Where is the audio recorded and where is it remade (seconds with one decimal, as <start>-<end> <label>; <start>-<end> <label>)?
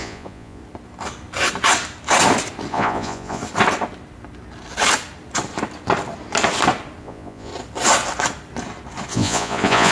0.0-0.6 remade; 0.6-2.7 recorded; 2.7-3.4 remade; 3.4-7.0 recorded; 7.0-7.5 remade; 7.5-9.1 recorded; 9.1-9.9 remade